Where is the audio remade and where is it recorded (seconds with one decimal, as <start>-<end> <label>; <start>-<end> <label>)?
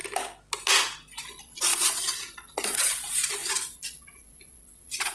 0.0-1.2 recorded; 1.2-5.1 remade